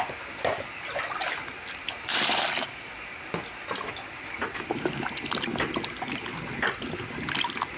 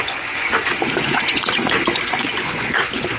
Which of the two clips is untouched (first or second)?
first